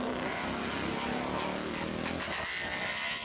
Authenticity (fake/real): real